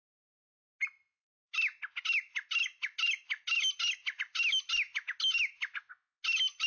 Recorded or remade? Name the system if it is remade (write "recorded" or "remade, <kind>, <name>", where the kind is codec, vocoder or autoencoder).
recorded